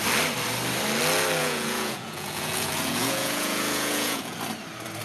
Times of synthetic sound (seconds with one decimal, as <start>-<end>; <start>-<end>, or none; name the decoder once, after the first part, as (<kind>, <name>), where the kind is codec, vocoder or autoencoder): 1.4-4.4 (vocoder, Vocos)